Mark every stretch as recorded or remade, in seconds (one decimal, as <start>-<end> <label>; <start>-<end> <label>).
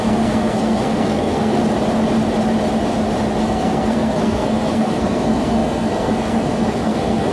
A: 0.0-1.6 remade; 1.6-3.4 recorded; 3.4-7.3 remade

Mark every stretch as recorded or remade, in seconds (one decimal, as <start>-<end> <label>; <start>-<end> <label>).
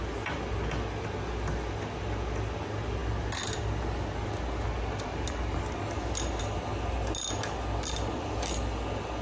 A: 0.0-9.2 recorded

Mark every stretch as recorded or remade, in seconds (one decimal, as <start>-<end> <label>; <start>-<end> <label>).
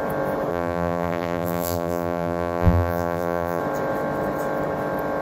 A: 0.0-0.5 recorded; 0.5-3.6 remade; 3.6-5.2 recorded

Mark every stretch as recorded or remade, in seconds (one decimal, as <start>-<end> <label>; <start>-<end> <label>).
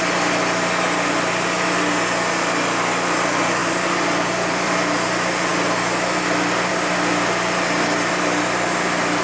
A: 0.0-3.6 recorded; 3.6-4.7 remade; 4.7-9.2 recorded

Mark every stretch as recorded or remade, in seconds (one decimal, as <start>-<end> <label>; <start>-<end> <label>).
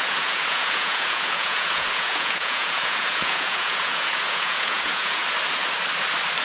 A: 0.0-5.2 remade; 5.2-6.4 recorded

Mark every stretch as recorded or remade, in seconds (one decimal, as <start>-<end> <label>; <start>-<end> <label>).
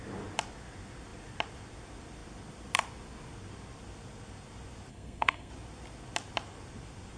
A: 0.0-4.9 recorded; 4.9-5.5 remade; 5.5-7.2 recorded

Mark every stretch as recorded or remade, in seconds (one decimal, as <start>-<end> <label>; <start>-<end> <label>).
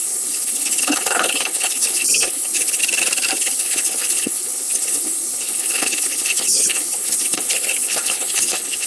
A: 0.0-2.8 remade; 2.8-3.4 recorded; 3.4-8.9 remade